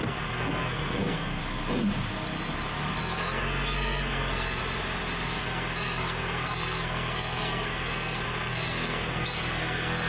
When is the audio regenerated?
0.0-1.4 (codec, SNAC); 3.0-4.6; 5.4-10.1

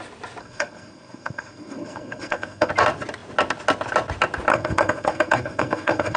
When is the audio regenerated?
0.4-2.7 (codec, SNAC); 4.5-6.2

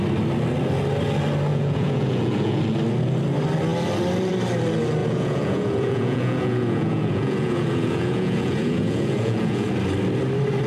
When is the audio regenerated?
1.5-2.6 (vocoder, Vocos); 5.0-9.7

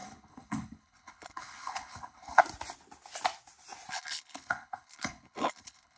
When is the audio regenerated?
0.0-2.4 (codec, HILCodec); 3.9-6.0

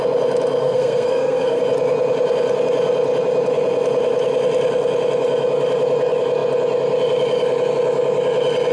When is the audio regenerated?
0.6-1.6 (codec, SNAC)

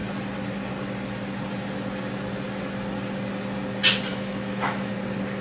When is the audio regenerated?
4.1-4.9 (autoencoder, DAC-VAE)

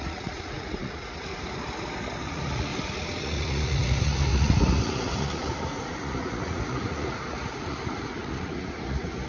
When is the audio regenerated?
0.0-1.3 (vocoder, Vocos); 2.3-2.7; 3.2-9.3

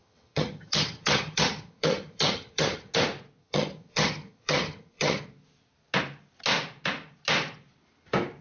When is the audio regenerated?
0.0-2.9 (vocoder, HiFi-GAN); 3.4-5.2